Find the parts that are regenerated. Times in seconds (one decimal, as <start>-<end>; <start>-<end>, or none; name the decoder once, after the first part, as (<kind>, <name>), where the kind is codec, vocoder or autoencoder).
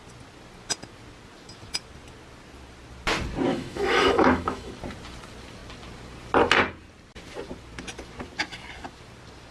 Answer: 3.5-4.7 (autoencoder, DAC-VAE)